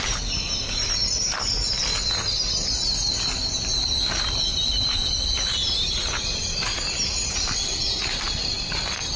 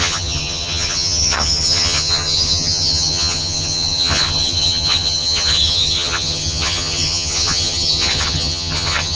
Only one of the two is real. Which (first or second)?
first